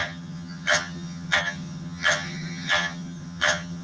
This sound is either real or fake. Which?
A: fake